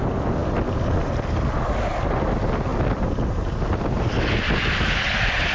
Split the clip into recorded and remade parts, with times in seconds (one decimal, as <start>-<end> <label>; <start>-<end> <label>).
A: 0.0-5.5 recorded